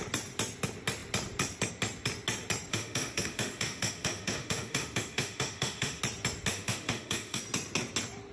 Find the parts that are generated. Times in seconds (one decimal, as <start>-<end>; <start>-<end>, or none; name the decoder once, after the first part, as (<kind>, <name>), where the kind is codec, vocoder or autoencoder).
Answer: 2.7-6.0 (autoencoder, DAC-VAE); 6.5-7.4